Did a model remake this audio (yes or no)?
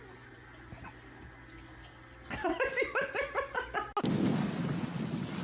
no